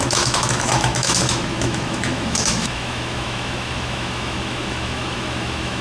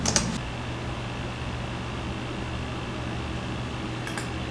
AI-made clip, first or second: first